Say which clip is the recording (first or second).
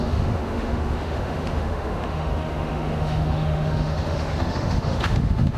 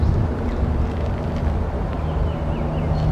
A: second